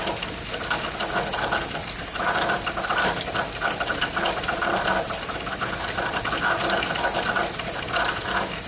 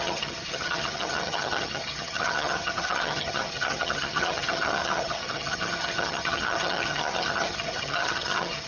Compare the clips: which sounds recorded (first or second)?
first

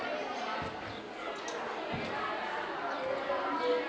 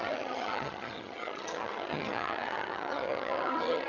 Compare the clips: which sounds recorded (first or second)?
first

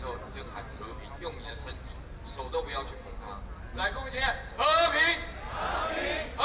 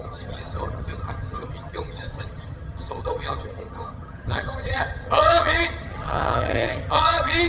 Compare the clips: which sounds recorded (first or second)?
first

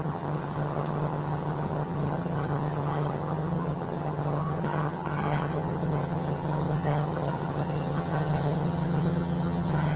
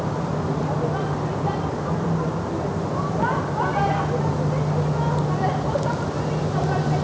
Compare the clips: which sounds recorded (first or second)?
second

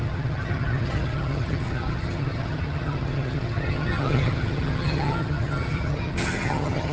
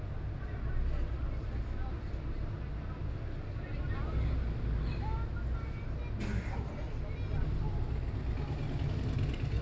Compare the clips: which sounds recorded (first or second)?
second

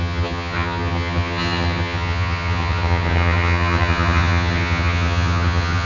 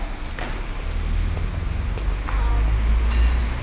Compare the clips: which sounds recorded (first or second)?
second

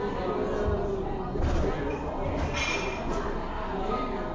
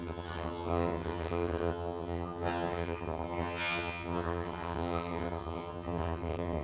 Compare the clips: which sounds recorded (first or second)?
first